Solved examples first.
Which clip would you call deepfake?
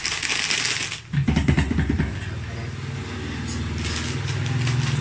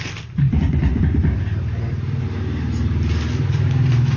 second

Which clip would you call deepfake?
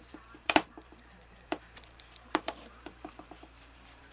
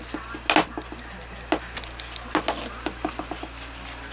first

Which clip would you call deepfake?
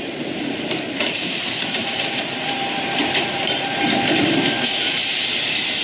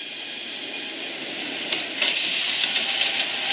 first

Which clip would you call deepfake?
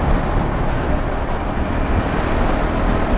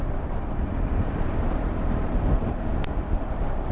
second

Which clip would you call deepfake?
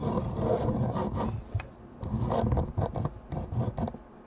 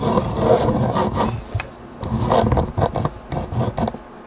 first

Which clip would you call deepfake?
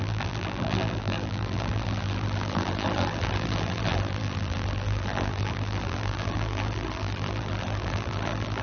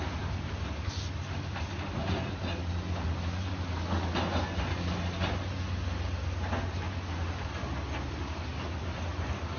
first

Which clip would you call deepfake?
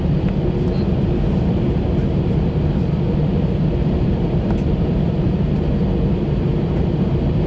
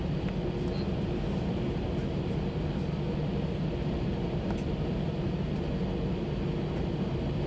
first